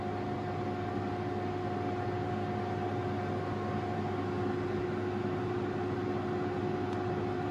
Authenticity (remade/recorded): recorded